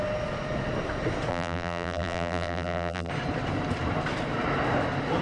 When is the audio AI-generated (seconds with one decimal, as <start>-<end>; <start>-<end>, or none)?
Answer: 1.3-3.1